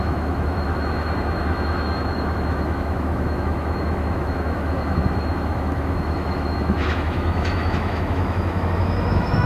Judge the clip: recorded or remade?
remade